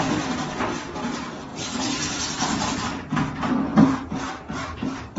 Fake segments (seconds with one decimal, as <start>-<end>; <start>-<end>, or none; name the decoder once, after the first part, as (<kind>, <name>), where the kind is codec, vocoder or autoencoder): none